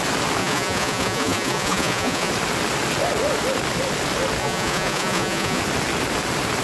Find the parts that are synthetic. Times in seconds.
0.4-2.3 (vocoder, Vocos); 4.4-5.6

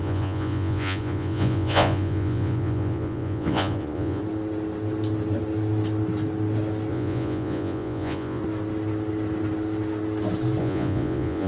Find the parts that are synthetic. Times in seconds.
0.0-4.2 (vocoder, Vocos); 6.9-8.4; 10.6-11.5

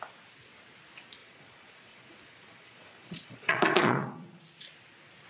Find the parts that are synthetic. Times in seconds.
1.2-4.4 (vocoder, Vocos)

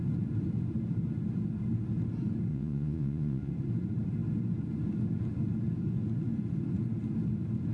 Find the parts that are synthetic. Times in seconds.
2.5-3.5 (vocoder, Vocos)